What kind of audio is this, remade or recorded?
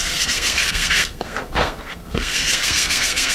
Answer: remade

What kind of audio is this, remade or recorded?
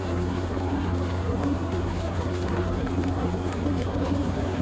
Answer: remade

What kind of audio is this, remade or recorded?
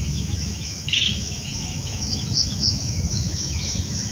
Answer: remade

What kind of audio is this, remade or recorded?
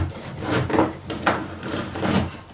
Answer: remade